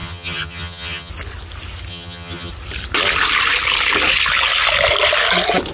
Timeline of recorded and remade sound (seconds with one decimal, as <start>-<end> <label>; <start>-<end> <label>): 0.0-1.1 remade; 1.1-1.9 recorded; 1.9-2.5 remade; 2.5-5.7 recorded